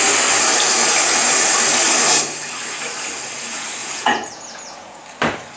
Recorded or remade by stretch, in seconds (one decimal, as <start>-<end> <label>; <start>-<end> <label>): 0.0-3.8 recorded; 3.8-5.0 remade; 5.0-5.6 recorded